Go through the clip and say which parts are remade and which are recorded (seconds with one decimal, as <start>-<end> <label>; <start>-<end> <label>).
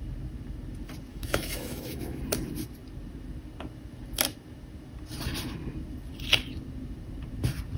0.0-1.1 recorded; 1.1-2.2 remade; 2.2-7.8 recorded